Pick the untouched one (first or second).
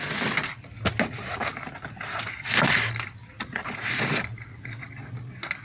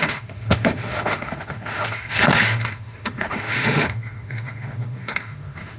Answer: first